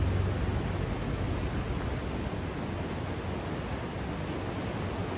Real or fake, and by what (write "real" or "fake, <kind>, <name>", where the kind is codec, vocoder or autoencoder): real